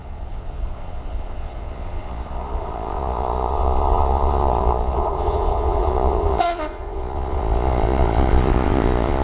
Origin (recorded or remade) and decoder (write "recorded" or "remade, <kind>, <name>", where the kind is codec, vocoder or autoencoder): remade, vocoder, Vocos